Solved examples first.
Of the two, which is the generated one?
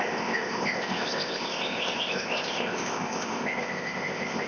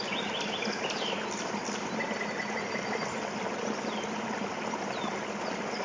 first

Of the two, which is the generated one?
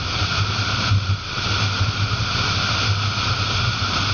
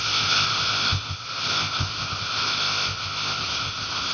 second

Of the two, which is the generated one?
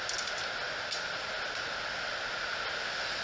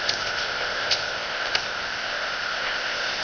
second